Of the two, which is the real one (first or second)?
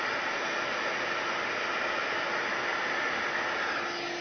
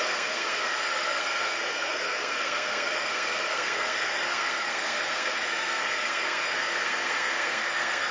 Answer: first